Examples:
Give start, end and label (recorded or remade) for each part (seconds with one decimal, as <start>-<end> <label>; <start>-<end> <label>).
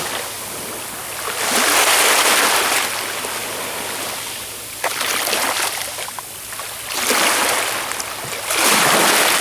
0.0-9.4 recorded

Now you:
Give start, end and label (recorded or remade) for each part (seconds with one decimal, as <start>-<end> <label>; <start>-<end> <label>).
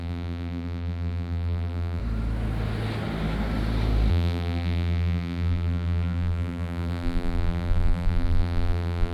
0.0-2.0 remade; 2.0-4.1 recorded; 4.1-9.1 remade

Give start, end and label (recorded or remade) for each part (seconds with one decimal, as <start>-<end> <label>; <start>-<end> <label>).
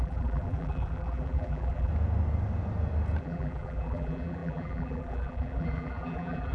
0.0-1.9 remade; 1.9-3.2 recorded; 3.2-6.5 remade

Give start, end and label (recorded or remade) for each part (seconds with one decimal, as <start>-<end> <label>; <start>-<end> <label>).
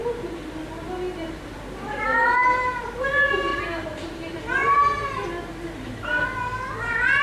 0.0-0.6 remade; 0.6-3.5 recorded; 3.5-4.4 remade; 4.4-7.2 recorded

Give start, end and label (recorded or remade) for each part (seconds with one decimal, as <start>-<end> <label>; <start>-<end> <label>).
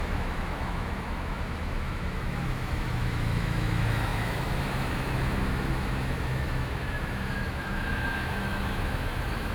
0.0-9.5 remade